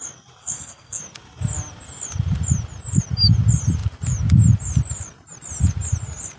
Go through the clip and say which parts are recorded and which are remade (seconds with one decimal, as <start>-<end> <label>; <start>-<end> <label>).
0.0-0.4 recorded; 0.4-1.0 remade; 1.0-6.4 recorded